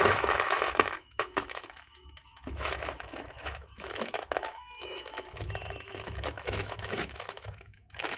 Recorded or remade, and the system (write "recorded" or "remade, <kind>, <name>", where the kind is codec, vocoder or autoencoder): remade, autoencoder, DAC-VAE